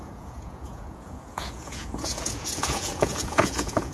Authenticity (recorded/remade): remade